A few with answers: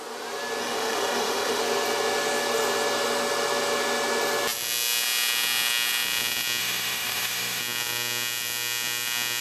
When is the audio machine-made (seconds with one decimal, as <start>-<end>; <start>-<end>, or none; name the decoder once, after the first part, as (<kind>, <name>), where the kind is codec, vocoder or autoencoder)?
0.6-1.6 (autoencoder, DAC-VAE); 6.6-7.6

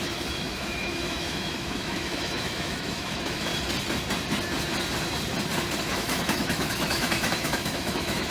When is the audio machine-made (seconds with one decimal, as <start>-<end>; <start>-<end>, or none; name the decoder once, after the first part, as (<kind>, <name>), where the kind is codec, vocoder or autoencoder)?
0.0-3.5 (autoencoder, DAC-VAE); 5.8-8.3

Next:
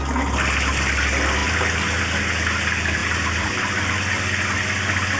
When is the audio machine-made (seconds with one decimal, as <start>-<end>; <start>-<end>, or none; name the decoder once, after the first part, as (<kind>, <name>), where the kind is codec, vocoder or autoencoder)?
none